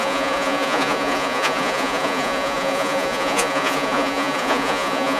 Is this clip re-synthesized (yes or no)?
yes